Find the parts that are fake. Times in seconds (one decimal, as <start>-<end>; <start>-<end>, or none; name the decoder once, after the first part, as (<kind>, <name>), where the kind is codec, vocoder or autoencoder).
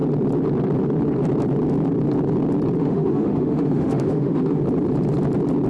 2.8-4.6 (autoencoder, DAC-VAE)